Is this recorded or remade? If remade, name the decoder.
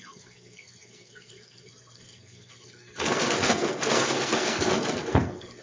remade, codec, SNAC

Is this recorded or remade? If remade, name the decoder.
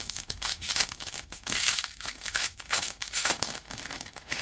remade, autoencoder, DAC-VAE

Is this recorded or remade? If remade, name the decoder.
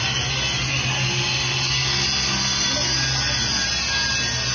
recorded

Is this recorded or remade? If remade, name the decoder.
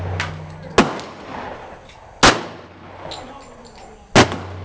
recorded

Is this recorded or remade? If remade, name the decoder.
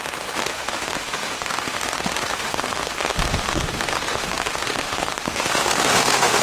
remade, autoencoder, DAC-VAE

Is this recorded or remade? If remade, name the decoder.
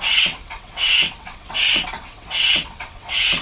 remade, vocoder, WaveNeXt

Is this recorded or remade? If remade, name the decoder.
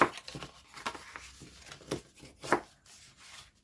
recorded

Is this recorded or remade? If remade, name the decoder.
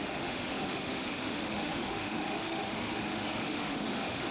remade, autoencoder, DAC-VAE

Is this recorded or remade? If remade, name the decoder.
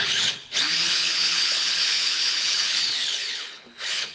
remade, codec, HILCodec